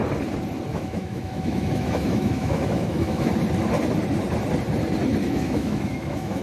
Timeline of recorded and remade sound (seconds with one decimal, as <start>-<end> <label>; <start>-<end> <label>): 0.0-0.7 recorded; 0.7-3.3 remade; 3.3-5.2 recorded; 5.2-6.4 remade